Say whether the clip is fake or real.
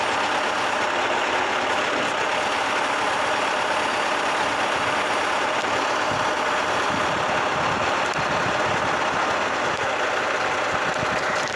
real